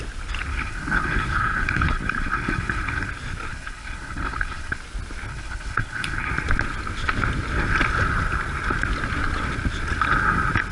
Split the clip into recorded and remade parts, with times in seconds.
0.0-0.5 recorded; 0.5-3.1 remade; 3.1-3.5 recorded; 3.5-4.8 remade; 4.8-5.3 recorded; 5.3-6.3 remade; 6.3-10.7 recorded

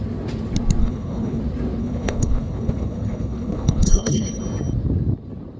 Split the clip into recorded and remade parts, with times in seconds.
0.0-0.8 recorded; 0.8-1.4 remade; 1.4-1.8 recorded; 1.8-4.4 remade; 4.4-5.6 recorded

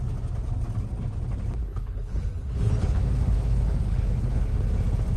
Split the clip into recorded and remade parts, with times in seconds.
0.0-1.6 recorded; 1.6-4.5 remade; 4.5-5.2 recorded